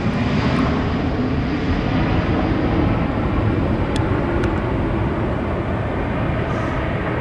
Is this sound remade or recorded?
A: recorded